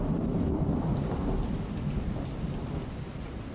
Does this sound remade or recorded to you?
recorded